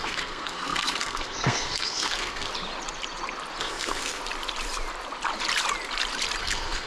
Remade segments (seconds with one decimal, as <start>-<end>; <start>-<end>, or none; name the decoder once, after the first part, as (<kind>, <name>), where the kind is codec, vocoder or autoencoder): 0.0-2.5 (codec, SNAC); 3.6-4.2; 6.4-6.9